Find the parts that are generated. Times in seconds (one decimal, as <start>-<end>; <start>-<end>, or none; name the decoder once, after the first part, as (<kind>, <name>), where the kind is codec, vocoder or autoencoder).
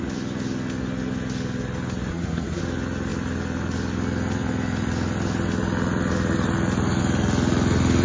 2.1-2.6 (codec, SNAC)